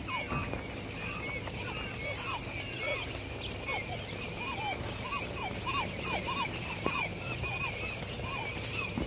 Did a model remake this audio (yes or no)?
no